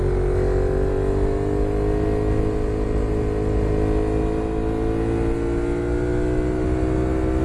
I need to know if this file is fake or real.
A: real